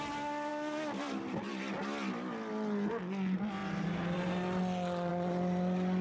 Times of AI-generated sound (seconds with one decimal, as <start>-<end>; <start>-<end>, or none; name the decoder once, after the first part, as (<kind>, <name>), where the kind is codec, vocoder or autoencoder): none